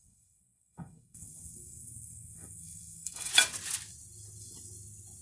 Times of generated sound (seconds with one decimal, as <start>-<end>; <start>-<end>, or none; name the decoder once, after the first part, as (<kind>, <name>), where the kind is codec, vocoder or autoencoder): 0.0-3.3 (codec, SNAC)

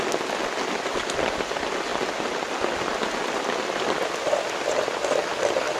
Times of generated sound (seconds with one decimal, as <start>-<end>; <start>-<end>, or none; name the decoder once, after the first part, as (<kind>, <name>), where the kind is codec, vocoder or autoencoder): none

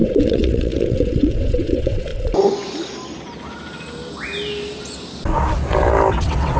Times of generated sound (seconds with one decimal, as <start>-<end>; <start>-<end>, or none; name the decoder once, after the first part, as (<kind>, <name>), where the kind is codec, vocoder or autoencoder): 0.0-2.1 (vocoder, WaveNeXt); 6.1-6.6

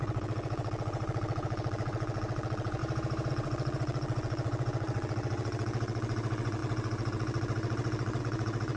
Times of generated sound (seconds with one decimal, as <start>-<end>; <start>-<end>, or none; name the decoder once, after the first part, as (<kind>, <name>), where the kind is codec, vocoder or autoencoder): 0.0-2.8 (vocoder, WaveNeXt); 3.3-8.8

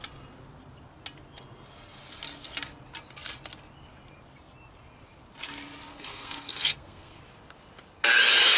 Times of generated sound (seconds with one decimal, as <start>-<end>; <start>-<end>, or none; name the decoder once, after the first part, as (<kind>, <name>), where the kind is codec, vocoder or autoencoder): 5.9-7.2 (codec, SNAC)

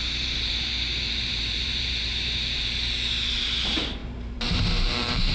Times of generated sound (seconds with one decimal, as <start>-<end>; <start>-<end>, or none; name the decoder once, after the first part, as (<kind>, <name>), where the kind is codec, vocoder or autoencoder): 0.0-5.3 (vocoder, BigVGAN v2)

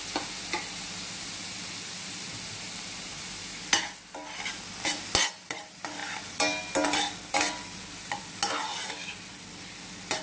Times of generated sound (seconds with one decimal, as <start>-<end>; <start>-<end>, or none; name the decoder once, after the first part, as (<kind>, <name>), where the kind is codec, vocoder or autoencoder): none

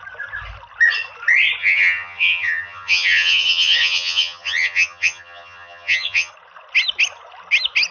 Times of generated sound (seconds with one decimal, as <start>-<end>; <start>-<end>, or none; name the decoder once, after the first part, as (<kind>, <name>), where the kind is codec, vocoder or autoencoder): 1.6-6.3 (vocoder, HiFi-GAN)